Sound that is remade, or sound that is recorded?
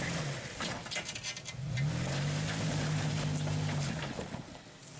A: recorded